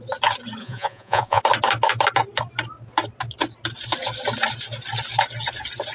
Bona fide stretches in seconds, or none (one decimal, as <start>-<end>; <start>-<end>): 0.0-0.6; 1.4-5.9